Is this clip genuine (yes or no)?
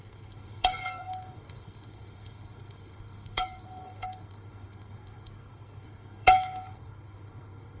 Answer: no